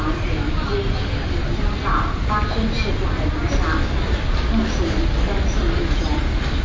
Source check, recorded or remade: recorded